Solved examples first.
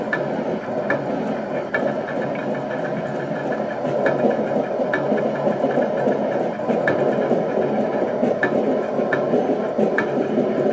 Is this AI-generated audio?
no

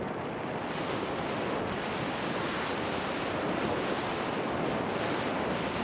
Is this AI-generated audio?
no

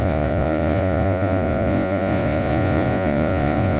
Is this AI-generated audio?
yes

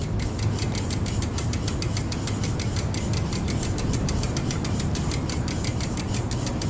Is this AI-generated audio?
no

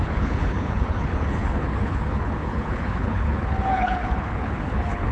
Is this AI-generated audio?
yes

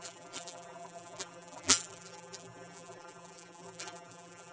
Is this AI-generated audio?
yes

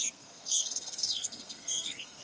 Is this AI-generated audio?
yes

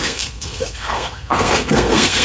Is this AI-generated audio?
yes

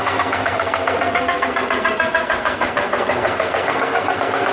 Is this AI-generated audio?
yes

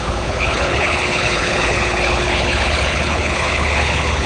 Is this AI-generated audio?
yes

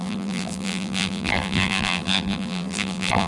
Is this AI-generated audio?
yes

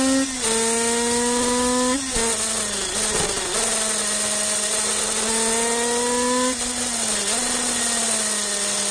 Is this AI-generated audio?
no